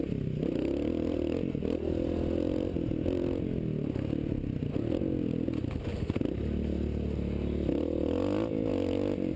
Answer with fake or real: real